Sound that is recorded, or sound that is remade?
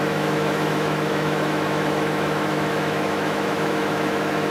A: remade